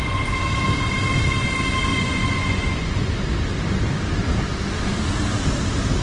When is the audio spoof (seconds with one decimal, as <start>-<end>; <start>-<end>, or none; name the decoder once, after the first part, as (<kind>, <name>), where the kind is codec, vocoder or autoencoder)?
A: 1.9-3.1 (vocoder, Vocos)